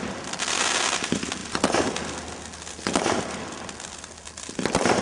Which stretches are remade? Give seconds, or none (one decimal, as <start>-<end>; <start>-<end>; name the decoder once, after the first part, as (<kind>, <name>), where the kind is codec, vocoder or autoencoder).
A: none